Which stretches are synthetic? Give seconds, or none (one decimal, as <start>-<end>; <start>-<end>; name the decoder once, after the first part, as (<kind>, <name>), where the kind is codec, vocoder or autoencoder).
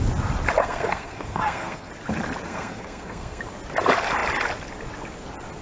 0.6-1.9 (codec, SNAC); 2.5-3.4